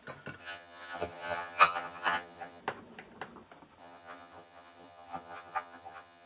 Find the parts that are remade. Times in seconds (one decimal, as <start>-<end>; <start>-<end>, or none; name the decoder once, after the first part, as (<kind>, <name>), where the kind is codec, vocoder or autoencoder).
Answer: 0.4-2.6 (vocoder, HiFi-GAN); 3.8-6.3

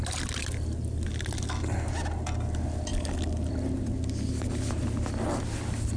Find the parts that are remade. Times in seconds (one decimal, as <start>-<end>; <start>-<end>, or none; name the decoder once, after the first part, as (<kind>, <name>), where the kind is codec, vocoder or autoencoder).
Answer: none

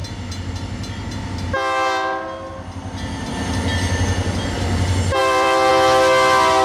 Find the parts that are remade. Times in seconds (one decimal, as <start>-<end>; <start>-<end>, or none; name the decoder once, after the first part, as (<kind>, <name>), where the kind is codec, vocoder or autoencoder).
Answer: 5.2-5.7 (vocoder, BigVGAN v2)

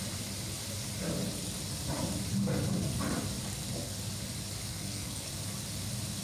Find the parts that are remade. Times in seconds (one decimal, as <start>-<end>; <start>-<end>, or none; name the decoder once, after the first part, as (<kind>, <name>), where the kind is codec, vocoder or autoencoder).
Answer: 4.7-5.3 (codec, SNAC)

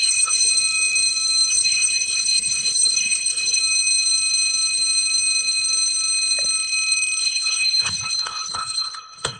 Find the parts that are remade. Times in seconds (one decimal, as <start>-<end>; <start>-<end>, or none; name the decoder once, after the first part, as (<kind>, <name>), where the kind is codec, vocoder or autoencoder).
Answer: 0.0-0.5 (codec, HILCodec); 1.5-3.6; 7.2-9.4